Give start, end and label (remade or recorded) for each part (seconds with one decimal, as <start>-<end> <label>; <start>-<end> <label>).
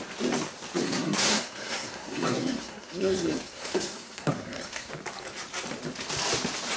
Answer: 0.0-0.8 recorded; 0.8-4.9 remade; 4.9-6.8 recorded